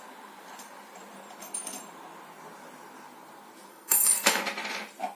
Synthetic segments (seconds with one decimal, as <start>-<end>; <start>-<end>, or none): 3.7-4.4